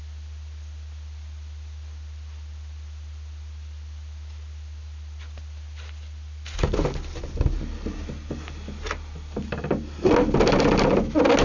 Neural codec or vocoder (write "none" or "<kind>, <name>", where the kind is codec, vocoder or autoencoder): none